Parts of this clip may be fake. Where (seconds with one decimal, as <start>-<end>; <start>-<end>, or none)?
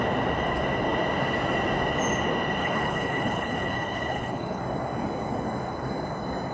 2.6-4.6